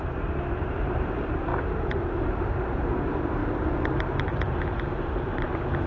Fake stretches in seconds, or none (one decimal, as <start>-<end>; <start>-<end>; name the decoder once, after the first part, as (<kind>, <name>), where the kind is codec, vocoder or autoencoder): 0.0-1.5 (vocoder, BigVGAN v2); 2.2-3.4; 4.0-5.9